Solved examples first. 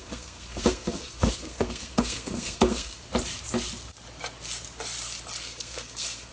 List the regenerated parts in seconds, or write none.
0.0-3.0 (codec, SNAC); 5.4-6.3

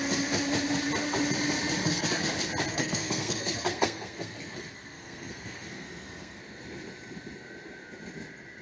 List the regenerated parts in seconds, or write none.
1.8-2.3 (codec, SNAC); 2.7-6.4

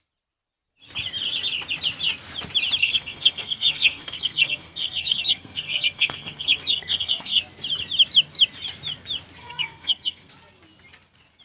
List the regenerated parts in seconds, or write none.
2.8-7.4 (codec, SNAC); 9.4-10.3

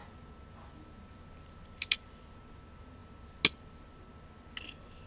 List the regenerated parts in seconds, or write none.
none

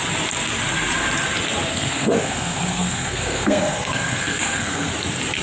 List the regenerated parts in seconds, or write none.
1.7-4.9 (codec, SNAC)

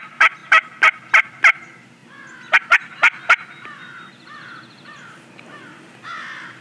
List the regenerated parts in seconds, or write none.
none